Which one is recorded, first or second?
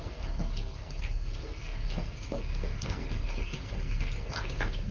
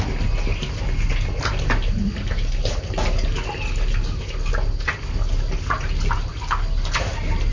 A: second